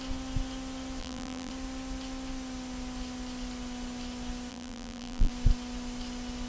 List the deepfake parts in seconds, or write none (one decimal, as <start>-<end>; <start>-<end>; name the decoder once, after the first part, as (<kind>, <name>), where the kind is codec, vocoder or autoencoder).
1.0-1.5 (vocoder, BigVGAN v2); 4.5-5.3